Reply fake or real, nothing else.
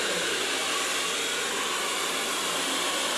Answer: real